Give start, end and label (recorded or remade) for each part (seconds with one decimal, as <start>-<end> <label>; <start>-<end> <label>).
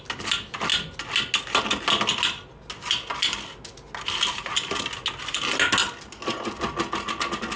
0.0-7.6 recorded